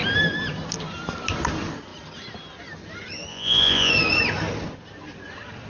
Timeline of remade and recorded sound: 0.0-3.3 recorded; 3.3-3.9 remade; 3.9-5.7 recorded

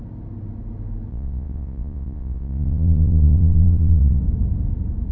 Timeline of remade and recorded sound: 0.0-1.1 recorded; 1.1-4.2 remade; 4.2-5.1 recorded